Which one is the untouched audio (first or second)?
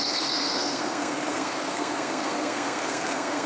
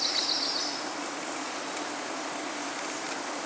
second